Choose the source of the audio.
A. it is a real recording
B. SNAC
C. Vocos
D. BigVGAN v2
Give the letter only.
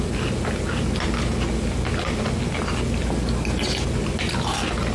A